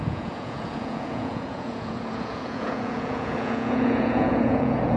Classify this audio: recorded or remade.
remade